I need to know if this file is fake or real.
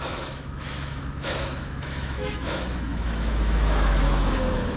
fake